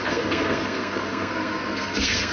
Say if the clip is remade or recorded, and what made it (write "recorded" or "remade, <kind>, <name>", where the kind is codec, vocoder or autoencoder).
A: remade, codec, SNAC